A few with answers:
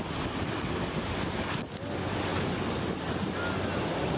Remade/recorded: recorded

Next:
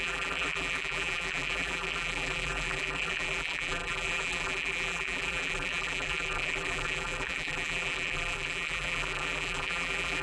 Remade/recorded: remade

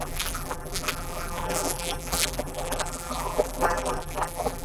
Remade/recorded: remade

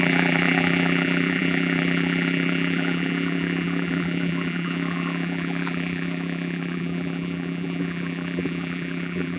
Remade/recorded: remade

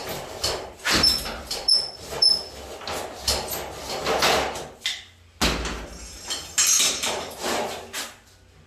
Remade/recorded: recorded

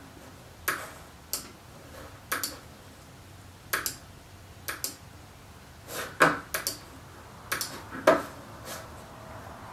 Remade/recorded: recorded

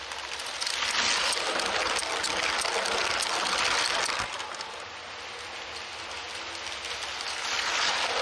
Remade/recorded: recorded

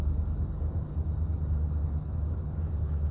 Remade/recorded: recorded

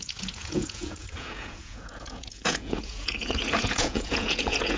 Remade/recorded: remade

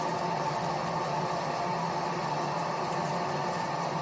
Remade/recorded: recorded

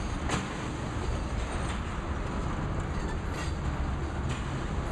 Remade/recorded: recorded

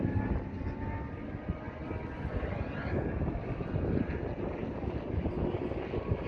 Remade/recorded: recorded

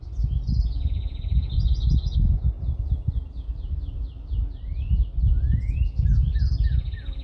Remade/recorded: recorded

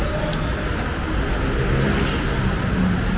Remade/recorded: recorded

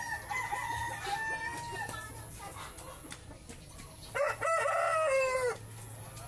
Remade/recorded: recorded